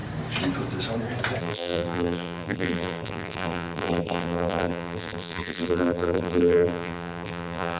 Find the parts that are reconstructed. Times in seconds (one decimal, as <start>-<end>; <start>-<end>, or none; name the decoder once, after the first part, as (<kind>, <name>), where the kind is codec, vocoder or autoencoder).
1.4-7.8 (vocoder, BigVGAN v2)